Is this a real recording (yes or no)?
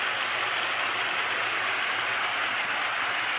yes